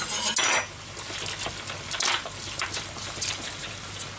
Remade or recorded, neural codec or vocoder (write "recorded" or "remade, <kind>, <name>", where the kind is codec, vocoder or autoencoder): recorded